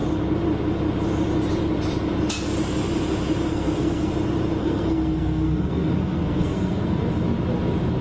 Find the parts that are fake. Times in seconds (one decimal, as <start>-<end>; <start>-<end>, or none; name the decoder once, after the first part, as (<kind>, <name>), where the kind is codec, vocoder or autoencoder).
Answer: 3.5-4.1 (codec, SNAC); 4.6-7.0